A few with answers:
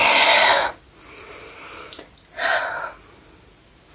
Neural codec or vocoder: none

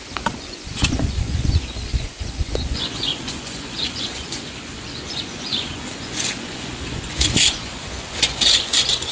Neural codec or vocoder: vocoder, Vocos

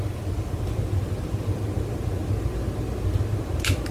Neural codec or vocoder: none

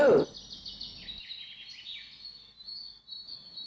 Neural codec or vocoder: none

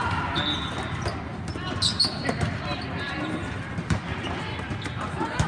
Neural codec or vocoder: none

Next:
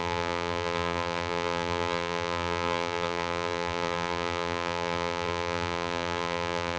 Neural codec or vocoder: vocoder, BigVGAN v2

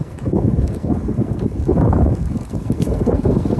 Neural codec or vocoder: codec, SNAC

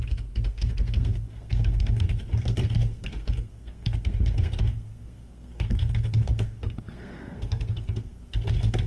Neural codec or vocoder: codec, SNAC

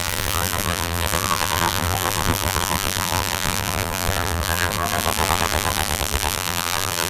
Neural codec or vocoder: vocoder, BigVGAN v2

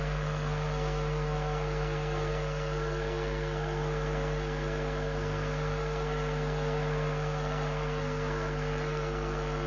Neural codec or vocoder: codec, SNAC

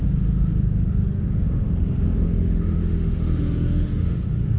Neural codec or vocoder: autoencoder, DAC-VAE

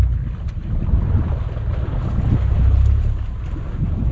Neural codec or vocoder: none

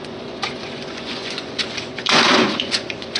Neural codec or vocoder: vocoder, Vocos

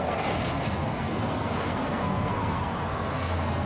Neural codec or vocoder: codec, SNAC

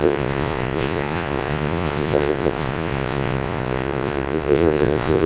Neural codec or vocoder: vocoder, Vocos